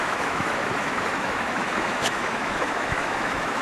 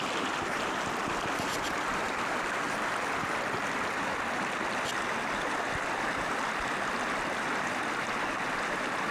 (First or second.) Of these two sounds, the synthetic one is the first